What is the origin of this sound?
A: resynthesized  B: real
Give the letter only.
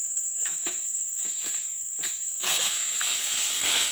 A